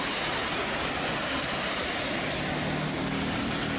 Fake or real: real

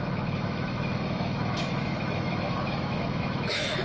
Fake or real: fake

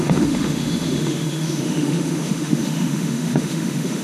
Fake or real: fake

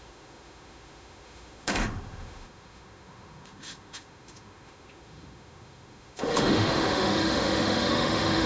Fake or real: fake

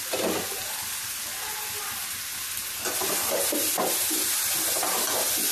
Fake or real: real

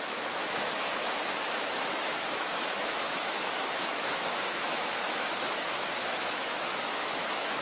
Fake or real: fake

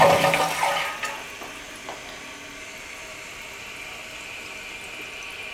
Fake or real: real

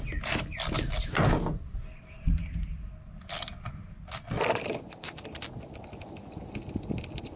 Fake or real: real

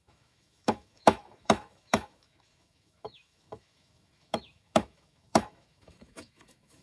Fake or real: fake